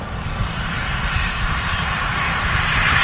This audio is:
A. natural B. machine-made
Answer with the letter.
B